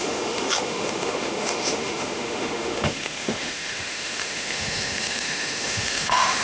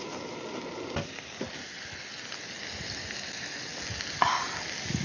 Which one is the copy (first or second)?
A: first